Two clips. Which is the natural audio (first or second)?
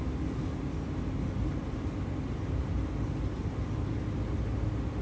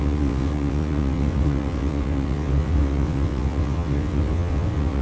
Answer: first